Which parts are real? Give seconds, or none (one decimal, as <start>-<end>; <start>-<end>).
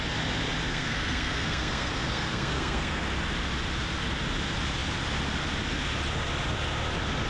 0.0-0.7; 3.0-7.3